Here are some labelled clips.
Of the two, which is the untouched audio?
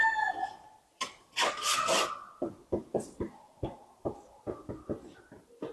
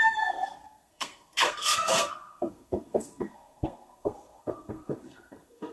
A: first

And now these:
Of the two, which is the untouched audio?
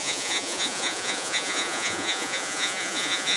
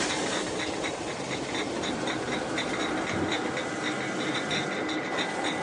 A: second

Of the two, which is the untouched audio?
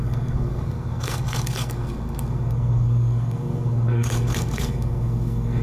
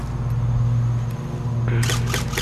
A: second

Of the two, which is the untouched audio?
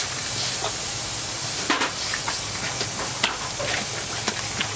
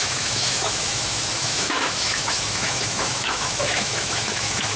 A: first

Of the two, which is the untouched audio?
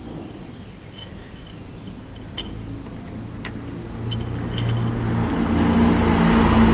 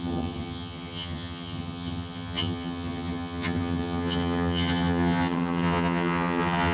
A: first